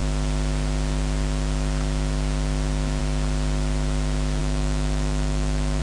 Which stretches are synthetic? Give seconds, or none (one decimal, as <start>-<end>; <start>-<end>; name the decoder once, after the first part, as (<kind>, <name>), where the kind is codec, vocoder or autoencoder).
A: 4.4-5.8 (autoencoder, DAC-VAE)